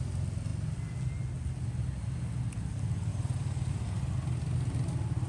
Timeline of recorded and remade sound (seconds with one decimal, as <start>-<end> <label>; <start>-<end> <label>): 0.0-3.1 recorded; 3.1-3.7 remade; 3.7-5.3 recorded

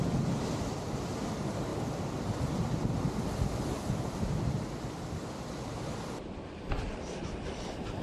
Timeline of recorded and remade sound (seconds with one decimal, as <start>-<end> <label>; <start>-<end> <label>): 0.0-8.0 recorded

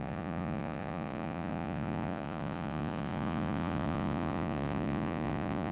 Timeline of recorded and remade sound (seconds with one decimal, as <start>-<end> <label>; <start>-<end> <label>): 0.0-5.7 remade

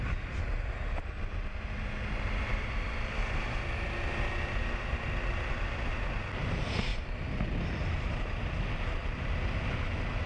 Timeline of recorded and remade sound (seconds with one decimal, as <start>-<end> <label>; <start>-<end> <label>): 0.0-10.3 recorded

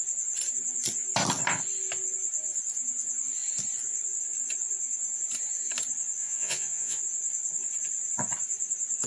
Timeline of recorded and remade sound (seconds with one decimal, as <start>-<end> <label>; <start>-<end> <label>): 0.0-6.2 recorded; 6.2-7.0 remade; 7.0-9.1 recorded

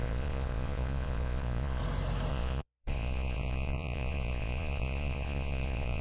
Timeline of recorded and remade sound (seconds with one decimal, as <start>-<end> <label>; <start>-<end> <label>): 0.0-1.8 remade; 1.8-2.3 recorded; 2.3-6.0 remade

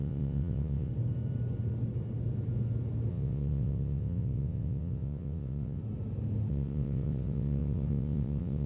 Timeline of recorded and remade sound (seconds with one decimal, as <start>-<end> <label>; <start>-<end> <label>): 0.0-0.9 remade; 0.9-3.1 recorded; 3.1-5.8 remade; 5.8-6.5 recorded; 6.5-8.7 remade